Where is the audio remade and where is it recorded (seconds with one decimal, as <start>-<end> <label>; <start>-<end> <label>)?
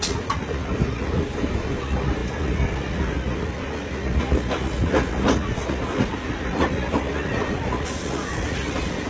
0.0-1.3 remade; 1.3-1.8 recorded; 1.8-9.1 remade